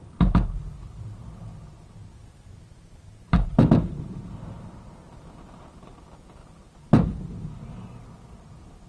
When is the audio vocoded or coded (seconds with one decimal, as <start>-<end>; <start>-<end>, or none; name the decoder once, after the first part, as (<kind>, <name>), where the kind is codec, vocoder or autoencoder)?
none

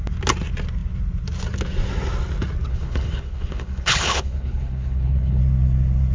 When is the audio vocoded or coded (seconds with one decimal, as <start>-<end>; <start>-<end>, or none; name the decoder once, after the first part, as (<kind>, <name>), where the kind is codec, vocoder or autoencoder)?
2.7-5.4 (codec, HILCodec)

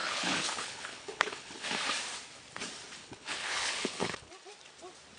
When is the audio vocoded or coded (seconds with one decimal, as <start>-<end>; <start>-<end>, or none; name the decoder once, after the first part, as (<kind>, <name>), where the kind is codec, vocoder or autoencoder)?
0.0-1.7 (codec, HILCodec); 3.0-4.3

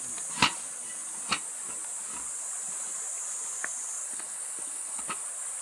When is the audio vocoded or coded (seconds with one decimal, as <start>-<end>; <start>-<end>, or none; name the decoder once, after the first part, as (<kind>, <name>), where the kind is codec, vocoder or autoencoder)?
4.0-5.0 (codec, HILCodec)

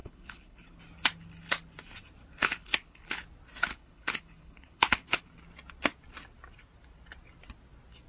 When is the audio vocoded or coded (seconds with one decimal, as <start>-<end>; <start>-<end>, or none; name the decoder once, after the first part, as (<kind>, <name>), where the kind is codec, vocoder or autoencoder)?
0.0-0.8 (codec, HILCodec); 2.4-3.2; 3.7-5.3

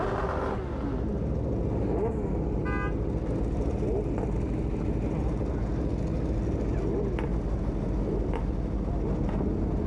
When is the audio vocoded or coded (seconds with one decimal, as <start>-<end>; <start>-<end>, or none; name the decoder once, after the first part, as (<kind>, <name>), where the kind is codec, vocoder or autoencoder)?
none

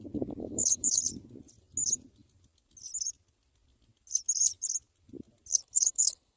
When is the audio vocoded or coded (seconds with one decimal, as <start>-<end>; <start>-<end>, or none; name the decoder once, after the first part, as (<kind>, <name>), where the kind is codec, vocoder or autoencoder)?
0.4-1.0 (codec, HILCodec); 5.5-6.4